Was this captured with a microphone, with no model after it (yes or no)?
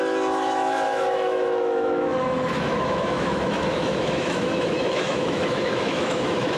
no